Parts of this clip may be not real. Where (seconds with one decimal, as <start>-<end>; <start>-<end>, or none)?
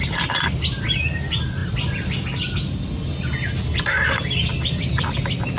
none